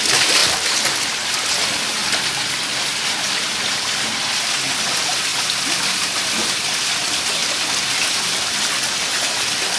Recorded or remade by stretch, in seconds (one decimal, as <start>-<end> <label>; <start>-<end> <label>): 0.0-7.4 recorded; 7.4-8.6 remade; 8.6-9.8 recorded